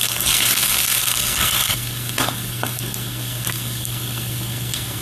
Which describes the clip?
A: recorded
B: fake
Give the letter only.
B